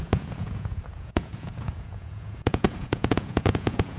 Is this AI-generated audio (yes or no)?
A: yes